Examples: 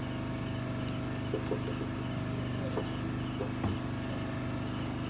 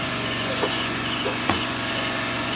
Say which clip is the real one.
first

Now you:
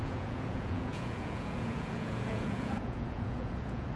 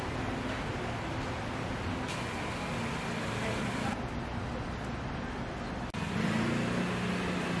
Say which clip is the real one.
second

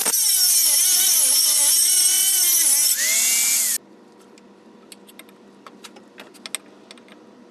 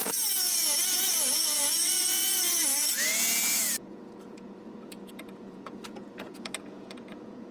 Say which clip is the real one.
first